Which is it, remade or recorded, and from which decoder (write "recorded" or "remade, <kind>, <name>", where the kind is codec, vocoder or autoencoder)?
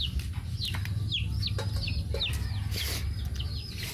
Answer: recorded